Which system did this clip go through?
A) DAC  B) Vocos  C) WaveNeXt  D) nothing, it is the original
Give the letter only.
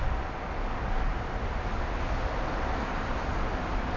D